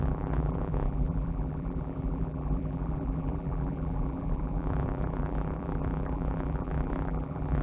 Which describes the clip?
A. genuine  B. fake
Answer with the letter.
B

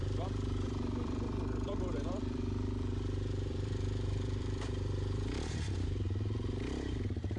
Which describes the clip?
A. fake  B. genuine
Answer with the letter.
A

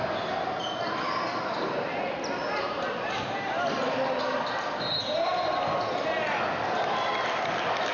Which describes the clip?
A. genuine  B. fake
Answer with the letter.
A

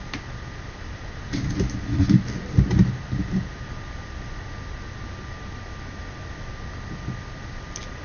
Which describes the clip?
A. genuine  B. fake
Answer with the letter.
A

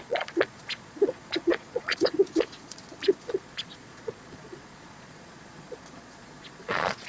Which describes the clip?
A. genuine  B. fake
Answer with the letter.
B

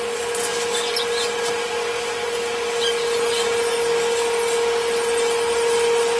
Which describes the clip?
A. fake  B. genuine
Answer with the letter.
B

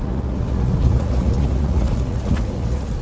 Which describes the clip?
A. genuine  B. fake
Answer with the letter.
B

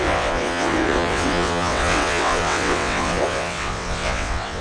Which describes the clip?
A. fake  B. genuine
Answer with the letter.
A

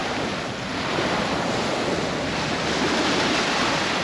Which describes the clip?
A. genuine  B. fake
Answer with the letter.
A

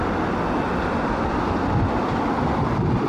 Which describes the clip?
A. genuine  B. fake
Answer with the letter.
A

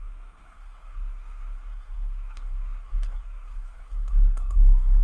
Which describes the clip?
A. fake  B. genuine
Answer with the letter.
A